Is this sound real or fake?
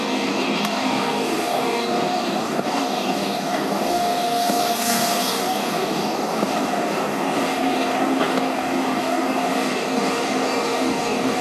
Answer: fake